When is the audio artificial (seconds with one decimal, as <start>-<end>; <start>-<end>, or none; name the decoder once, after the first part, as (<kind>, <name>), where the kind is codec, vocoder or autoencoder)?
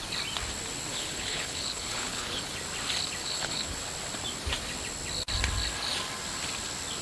0.9-2.5 (codec, HILCodec); 3.2-3.8